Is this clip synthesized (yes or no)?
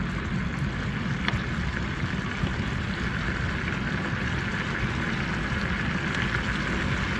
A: no